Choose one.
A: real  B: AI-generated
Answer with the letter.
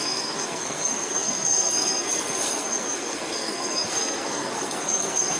B